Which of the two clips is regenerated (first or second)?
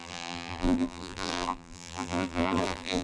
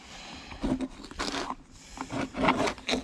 first